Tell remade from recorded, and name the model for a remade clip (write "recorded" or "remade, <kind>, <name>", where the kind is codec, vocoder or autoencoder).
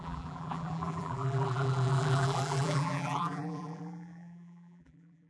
remade, vocoder, BigVGAN v2